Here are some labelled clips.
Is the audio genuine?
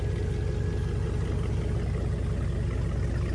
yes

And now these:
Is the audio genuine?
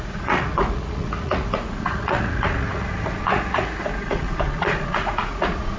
no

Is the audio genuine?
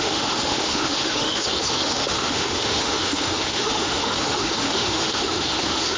no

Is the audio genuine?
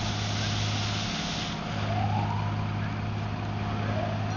yes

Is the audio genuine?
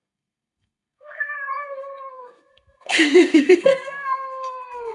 no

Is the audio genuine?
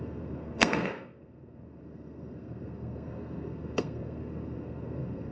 no